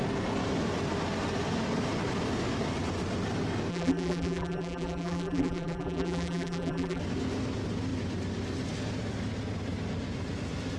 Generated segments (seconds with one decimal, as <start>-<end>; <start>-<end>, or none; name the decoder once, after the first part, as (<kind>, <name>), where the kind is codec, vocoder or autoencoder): 3.7-7.0 (vocoder, BigVGAN v2)